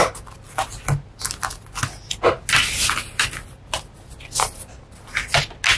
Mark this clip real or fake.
real